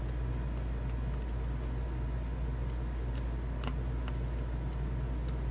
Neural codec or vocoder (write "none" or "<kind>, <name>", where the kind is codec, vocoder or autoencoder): none